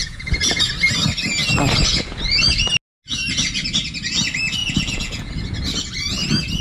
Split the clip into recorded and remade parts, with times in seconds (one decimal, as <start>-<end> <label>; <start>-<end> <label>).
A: 0.0-0.7 remade; 0.7-4.6 recorded; 4.6-5.3 remade; 5.3-6.6 recorded